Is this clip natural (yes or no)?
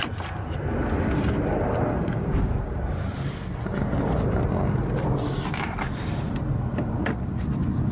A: yes